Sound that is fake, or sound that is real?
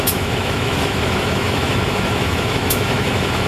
fake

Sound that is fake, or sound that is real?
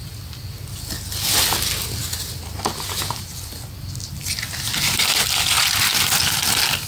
real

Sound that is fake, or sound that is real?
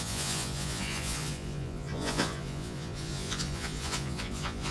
fake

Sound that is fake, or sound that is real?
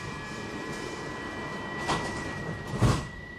fake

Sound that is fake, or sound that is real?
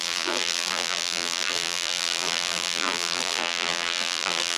fake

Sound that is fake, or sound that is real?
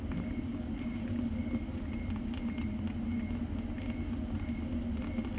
real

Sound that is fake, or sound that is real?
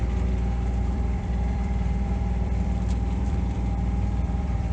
fake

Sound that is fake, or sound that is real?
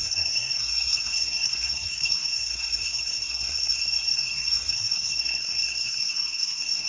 fake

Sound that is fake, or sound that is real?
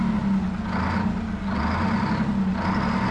real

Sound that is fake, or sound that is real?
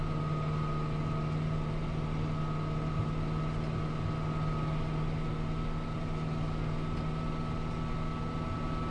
real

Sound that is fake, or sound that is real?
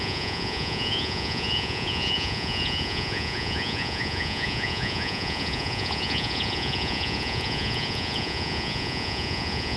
fake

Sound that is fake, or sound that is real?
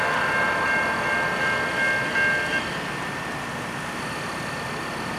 real